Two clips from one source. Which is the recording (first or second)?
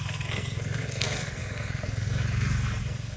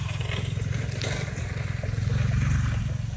second